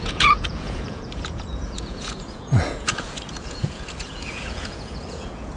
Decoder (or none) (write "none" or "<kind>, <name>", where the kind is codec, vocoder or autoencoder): vocoder, Vocos